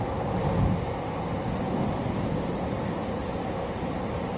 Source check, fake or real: real